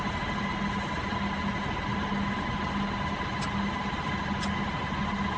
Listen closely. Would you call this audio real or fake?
real